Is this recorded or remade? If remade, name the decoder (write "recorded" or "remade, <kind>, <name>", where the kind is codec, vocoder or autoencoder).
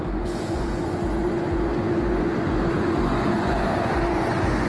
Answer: remade, vocoder, Vocos